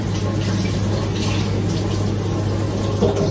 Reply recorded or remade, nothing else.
recorded